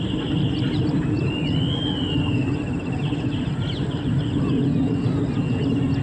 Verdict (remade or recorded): recorded